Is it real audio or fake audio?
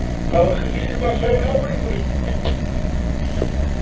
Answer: fake